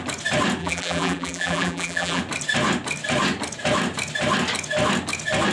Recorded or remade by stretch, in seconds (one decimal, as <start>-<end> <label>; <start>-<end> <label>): 0.0-0.6 recorded; 0.6-2.2 remade; 2.2-5.5 recorded